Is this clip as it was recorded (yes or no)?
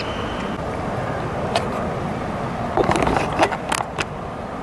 yes